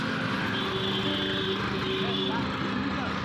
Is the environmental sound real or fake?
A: real